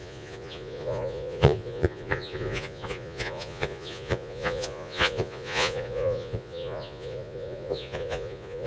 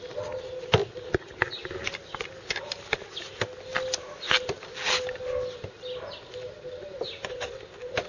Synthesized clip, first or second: first